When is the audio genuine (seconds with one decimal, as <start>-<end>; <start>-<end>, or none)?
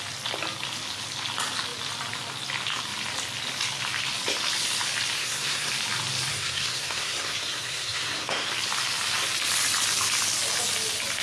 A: 0.0-5.2; 5.7-6.3; 8.5-11.2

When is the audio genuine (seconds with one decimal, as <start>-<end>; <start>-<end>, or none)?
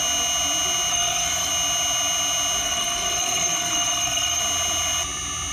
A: 0.0-0.9; 1.5-2.6; 4.4-5.5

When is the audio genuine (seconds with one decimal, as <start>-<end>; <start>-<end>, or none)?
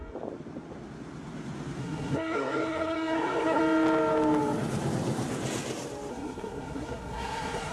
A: 0.0-1.8; 3.6-6.1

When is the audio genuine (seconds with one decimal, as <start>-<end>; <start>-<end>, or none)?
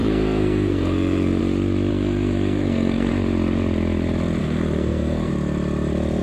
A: 1.4-1.9; 3.1-4.4; 5.3-6.2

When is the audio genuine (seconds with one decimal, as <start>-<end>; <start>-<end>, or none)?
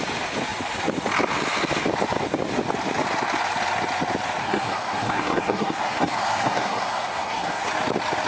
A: 0.0-4.4; 7.7-8.3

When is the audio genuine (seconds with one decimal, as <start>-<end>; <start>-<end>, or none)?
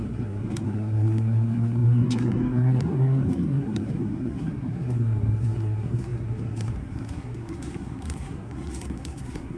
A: none